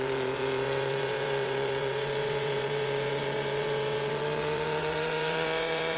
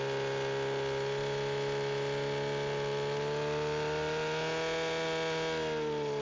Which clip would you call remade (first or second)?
first